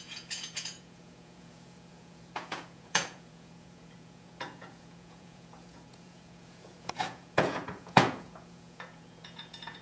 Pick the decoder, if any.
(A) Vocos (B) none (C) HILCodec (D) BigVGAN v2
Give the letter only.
A